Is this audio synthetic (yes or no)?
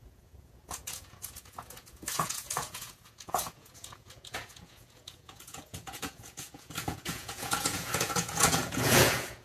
yes